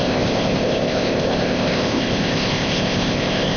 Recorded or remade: remade